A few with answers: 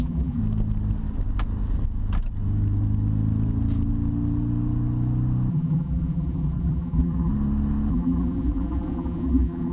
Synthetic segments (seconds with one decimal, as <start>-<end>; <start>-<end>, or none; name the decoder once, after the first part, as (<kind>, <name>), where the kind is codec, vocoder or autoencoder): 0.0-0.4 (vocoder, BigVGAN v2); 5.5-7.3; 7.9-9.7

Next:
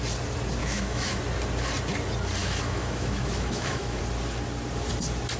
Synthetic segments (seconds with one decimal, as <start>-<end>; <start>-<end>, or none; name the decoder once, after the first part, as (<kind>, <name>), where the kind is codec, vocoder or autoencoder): 0.6-1.2 (autoencoder, DAC-VAE); 2.4-4.0

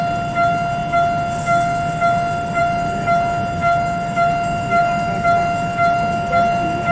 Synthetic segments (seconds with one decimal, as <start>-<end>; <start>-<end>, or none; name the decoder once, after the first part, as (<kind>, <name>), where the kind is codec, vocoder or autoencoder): none

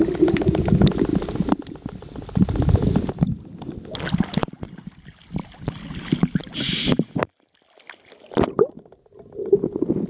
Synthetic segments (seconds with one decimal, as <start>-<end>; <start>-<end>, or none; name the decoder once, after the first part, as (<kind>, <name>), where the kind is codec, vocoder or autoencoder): none

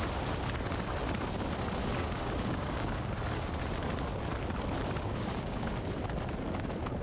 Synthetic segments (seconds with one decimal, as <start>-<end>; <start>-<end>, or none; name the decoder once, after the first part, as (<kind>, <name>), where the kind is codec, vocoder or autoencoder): 1.8-3.1 (codec, DAC); 5.1-5.7

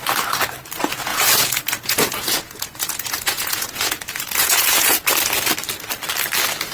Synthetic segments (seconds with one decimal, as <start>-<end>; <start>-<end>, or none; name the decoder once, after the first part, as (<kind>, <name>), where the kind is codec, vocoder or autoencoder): 1.1-5.1 (vocoder, Vocos)

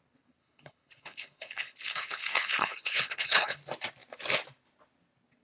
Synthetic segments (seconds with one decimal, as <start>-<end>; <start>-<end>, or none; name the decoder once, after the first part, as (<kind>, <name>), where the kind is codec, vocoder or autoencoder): 0.4-3.6 (codec, HILCodec)

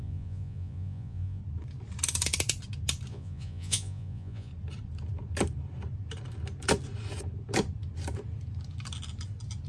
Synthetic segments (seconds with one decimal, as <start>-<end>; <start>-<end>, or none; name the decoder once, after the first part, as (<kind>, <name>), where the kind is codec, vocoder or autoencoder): 0.0-1.4 (vocoder, Vocos); 3.1-4.5